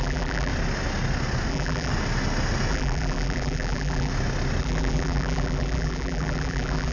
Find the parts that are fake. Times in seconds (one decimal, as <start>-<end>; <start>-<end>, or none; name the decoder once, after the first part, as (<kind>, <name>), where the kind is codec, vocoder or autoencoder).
0.0-0.5 (vocoder, BigVGAN v2); 1.5-1.9; 2.7-4.1; 4.6-6.9